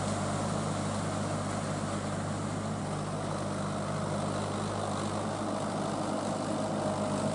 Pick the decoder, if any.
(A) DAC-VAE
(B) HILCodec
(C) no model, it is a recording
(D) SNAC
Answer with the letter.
C